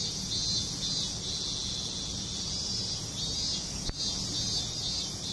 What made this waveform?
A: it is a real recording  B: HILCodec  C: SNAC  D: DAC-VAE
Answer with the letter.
A